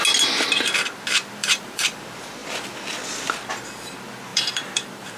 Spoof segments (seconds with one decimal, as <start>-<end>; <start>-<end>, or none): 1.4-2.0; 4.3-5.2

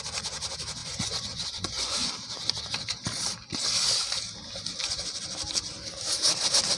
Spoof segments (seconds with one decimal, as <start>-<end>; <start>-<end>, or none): 0.8-2.1

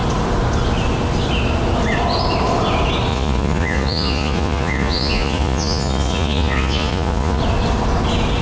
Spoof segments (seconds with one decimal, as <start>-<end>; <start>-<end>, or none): 3.1-7.4

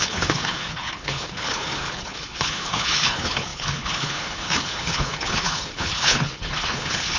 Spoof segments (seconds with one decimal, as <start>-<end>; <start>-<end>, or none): 0.0-7.2

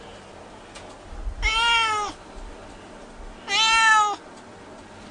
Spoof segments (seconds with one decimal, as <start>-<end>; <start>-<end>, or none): none

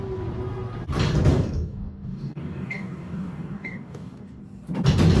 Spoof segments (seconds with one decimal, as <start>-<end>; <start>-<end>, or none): 1.3-4.4